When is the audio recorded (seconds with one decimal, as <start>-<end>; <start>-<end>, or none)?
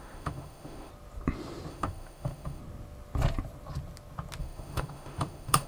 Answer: 0.9-1.7; 2.6-4.4